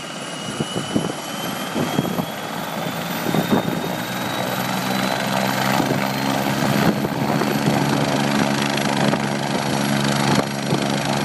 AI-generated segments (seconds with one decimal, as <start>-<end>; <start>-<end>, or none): none